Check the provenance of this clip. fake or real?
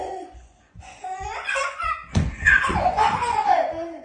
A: fake